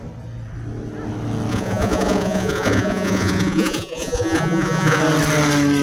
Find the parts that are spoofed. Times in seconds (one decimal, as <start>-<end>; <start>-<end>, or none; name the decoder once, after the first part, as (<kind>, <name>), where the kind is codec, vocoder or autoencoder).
1.5-5.0 (vocoder, Vocos)